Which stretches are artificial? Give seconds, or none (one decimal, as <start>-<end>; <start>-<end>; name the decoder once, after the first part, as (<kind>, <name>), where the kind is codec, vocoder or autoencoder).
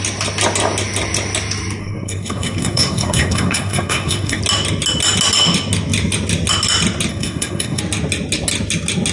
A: 1.8-4.4 (codec, SNAC); 7.1-7.8